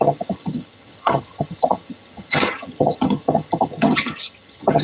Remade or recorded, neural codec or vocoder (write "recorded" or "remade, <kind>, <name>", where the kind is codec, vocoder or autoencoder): remade, vocoder, HiFi-GAN